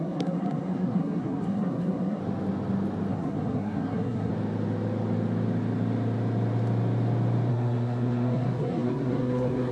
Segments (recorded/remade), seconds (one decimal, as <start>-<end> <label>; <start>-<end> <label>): 0.0-2.2 remade; 2.2-3.1 recorded; 3.1-4.3 remade; 4.3-7.5 recorded; 7.5-9.7 remade